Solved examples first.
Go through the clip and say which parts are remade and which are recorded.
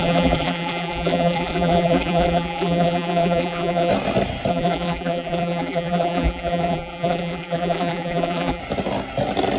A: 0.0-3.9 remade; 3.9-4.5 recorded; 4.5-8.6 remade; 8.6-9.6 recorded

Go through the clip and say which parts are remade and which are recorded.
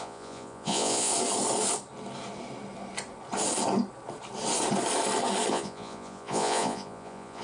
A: 0.0-1.1 remade; 1.1-5.5 recorded; 5.5-7.4 remade